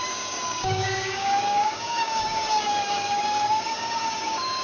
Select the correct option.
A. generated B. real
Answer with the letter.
A